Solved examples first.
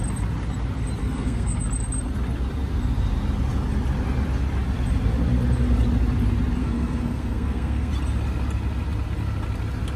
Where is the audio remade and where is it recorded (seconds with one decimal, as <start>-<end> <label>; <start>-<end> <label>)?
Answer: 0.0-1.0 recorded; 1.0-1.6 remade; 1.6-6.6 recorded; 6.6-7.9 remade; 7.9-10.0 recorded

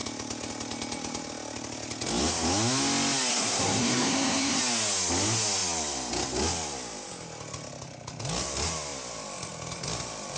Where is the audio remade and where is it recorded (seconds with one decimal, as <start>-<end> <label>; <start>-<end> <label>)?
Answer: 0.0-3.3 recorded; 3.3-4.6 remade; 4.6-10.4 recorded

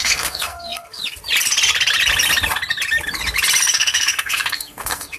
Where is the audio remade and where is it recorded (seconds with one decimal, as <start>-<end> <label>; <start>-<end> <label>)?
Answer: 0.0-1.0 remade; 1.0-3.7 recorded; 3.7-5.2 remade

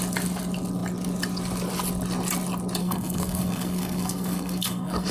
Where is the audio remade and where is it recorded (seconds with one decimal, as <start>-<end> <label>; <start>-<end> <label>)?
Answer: 0.0-2.8 recorded; 2.8-5.1 remade

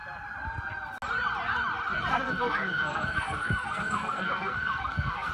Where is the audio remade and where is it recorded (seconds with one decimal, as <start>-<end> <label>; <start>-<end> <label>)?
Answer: 0.0-2.1 recorded; 2.1-5.3 remade

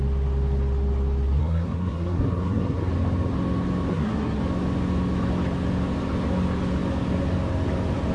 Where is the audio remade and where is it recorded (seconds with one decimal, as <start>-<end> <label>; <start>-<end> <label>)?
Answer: 0.0-1.4 recorded; 1.4-2.9 remade; 2.9-3.9 recorded; 3.9-4.4 remade; 4.4-8.1 recorded

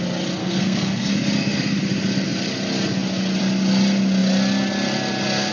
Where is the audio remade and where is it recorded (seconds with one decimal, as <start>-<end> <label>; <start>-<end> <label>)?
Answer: 0.0-0.4 recorded; 0.4-1.1 remade; 1.1-5.5 recorded

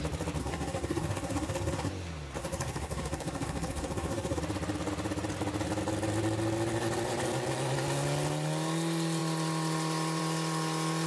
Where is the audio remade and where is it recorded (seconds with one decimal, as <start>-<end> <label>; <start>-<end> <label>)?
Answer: 0.0-0.4 recorded; 0.4-1.9 remade; 1.9-2.4 recorded; 2.4-4.4 remade; 4.4-11.1 recorded